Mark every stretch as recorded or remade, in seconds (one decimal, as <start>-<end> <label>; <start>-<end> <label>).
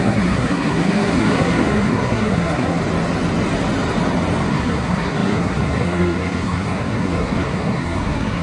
0.0-2.8 remade; 2.8-4.5 recorded; 4.5-8.4 remade